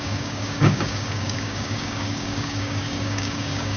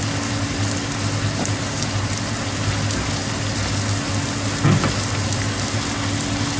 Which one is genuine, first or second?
second